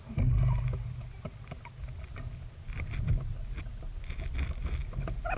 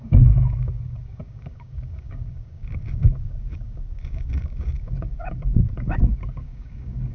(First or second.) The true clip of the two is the first